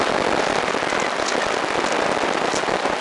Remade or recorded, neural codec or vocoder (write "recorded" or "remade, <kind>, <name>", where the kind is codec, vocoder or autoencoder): recorded